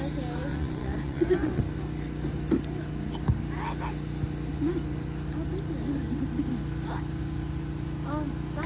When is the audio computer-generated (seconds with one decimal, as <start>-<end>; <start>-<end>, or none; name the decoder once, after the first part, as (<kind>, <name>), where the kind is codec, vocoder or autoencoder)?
0.5-1.6 (vocoder, Vocos)